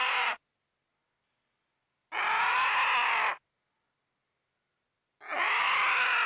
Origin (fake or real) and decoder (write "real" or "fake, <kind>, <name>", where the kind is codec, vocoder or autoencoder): real